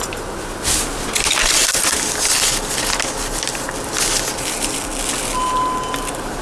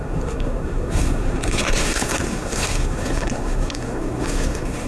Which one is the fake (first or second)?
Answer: second